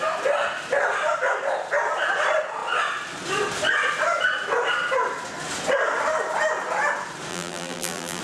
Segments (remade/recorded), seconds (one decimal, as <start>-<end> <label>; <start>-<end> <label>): 0.0-7.3 recorded; 7.3-8.2 remade